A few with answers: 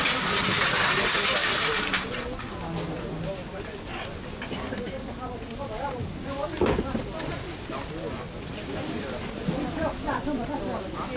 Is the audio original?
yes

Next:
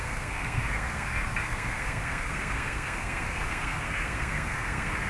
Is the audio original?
no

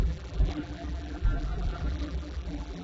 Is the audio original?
no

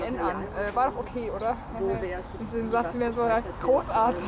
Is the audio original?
yes